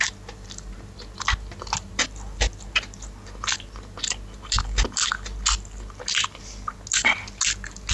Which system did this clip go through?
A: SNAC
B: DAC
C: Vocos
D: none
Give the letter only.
D